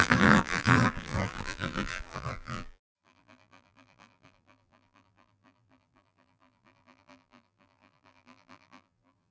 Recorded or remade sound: remade